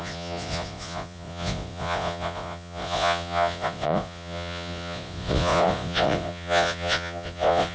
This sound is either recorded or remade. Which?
remade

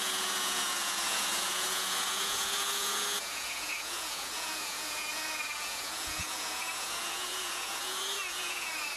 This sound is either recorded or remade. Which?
remade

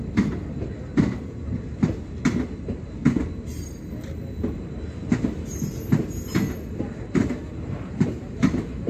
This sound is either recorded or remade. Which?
recorded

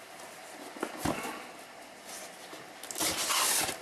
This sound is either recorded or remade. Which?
recorded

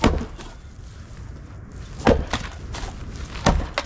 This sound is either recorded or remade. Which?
recorded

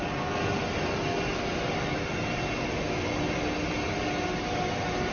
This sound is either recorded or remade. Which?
recorded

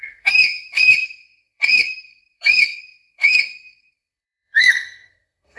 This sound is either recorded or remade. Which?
remade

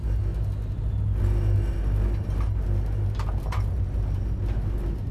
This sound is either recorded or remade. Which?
recorded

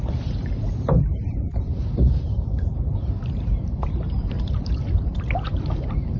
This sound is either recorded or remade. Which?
remade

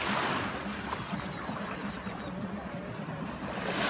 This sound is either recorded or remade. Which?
recorded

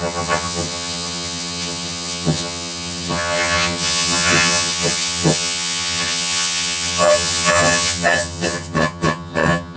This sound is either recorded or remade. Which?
remade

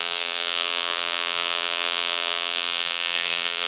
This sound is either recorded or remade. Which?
remade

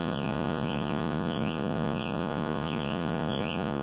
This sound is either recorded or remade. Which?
remade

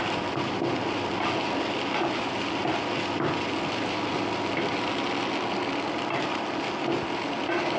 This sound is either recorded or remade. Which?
recorded